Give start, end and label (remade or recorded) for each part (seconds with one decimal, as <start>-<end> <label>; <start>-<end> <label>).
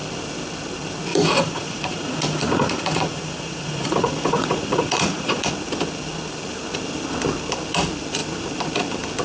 0.0-1.1 recorded; 1.1-5.5 remade; 5.5-9.2 recorded